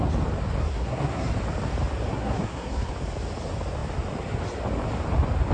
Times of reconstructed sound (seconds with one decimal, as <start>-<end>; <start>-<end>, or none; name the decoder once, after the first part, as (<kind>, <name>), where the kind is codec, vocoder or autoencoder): 0.6-1.3 (codec, SNAC); 2.1-2.9